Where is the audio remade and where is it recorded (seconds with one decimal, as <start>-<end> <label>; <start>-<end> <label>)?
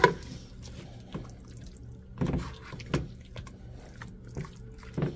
0.0-5.2 recorded